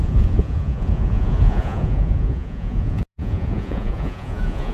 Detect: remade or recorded remade